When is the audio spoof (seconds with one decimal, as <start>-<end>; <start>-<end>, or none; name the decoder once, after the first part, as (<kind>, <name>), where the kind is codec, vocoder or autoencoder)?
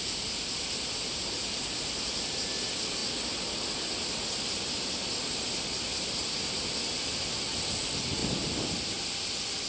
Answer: none